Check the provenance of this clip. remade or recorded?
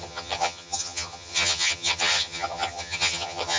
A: remade